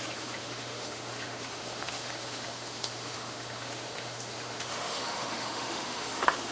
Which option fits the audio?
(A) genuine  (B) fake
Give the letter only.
B